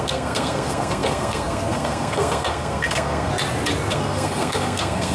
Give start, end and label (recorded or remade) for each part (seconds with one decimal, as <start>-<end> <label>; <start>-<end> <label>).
0.0-3.3 remade; 3.3-3.9 recorded; 3.9-5.1 remade